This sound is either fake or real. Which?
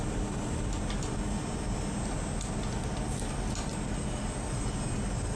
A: real